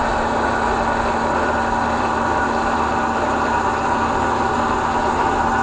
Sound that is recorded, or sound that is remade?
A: recorded